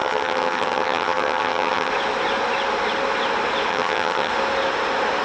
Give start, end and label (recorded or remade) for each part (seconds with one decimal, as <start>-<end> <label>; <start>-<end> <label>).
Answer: 0.0-1.9 remade; 1.9-3.7 recorded; 3.7-4.3 remade; 4.3-5.2 recorded